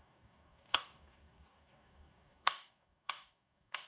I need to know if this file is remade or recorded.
remade